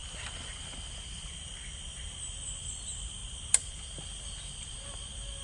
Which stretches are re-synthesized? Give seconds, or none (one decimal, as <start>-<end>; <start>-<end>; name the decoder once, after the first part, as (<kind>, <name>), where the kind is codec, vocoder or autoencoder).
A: none